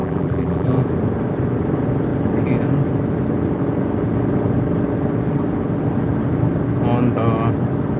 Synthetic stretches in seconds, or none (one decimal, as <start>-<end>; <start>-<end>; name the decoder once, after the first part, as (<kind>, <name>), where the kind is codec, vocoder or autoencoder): 0.0-0.8 (vocoder, BigVGAN v2)

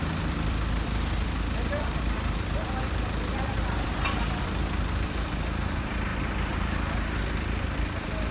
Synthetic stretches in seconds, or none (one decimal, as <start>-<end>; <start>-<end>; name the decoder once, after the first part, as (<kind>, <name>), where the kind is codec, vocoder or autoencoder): 0.0-6.1 (vocoder, BigVGAN v2); 7.3-8.3

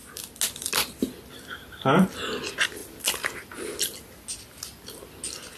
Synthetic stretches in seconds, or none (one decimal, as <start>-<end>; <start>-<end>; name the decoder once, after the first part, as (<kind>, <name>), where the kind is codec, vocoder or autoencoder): none

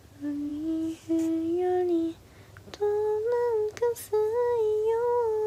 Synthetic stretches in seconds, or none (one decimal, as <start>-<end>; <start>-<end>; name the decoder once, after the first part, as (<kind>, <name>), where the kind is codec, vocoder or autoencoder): none

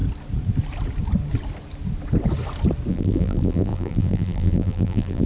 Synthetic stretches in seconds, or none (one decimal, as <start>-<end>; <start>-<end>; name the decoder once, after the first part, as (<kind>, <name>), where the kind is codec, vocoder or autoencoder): 2.9-5.3 (vocoder, BigVGAN v2)

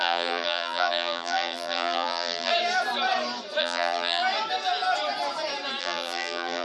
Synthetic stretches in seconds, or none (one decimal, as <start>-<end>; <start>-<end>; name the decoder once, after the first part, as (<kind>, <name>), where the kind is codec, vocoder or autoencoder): 0.0-2.5 (vocoder, BigVGAN v2); 3.6-4.2; 5.8-6.6